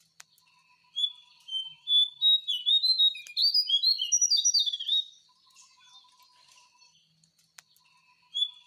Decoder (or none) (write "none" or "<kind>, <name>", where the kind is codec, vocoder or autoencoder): none